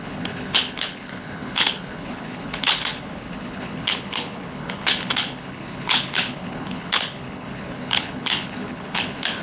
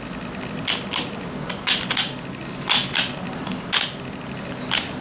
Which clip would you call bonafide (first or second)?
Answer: second